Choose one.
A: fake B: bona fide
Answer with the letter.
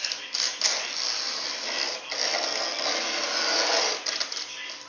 B